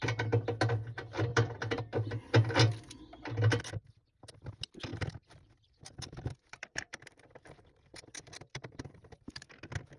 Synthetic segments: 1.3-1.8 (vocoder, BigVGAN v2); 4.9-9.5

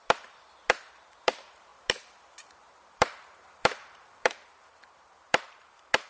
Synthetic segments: 0.0-6.1 (vocoder, BigVGAN v2)